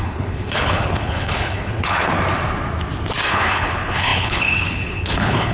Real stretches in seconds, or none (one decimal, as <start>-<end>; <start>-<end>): 2.1-3.3